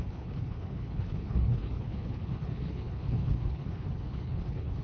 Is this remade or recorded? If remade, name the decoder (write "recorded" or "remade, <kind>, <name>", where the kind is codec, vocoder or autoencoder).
remade, codec, HILCodec